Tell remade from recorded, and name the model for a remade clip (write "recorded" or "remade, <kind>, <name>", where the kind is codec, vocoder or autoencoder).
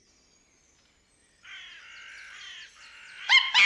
recorded